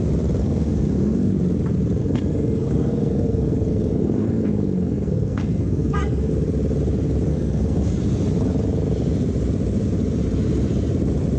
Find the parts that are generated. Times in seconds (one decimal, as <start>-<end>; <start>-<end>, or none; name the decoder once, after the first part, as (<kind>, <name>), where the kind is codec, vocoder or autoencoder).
0.4-1.3 (codec, SNAC); 2.0-6.3; 7.3-8.0